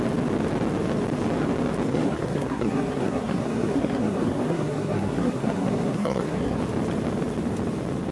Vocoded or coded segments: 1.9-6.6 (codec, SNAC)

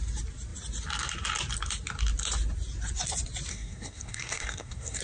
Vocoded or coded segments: 3.5-5.0 (codec, SNAC)

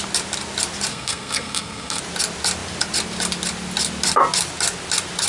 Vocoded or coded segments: 0.9-2.0 (codec, SNAC)

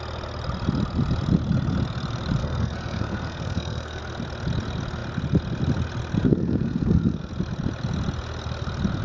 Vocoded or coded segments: 2.4-4.0 (codec, SNAC); 6.2-7.3

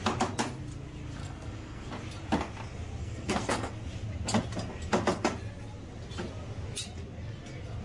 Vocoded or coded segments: 1.2-1.9 (codec, SNAC); 3.0-3.7

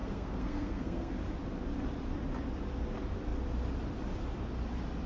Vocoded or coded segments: 0.0-1.1 (codec, SNAC)